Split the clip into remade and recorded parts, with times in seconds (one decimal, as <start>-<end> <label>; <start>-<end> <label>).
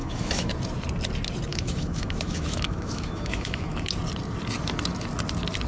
0.0-0.5 remade; 0.5-1.5 recorded; 1.5-3.9 remade; 3.9-5.7 recorded